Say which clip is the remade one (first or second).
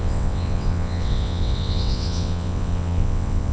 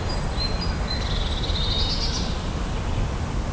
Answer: first